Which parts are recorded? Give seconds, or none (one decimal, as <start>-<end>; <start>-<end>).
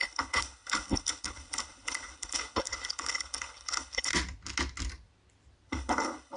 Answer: 4.1-5.7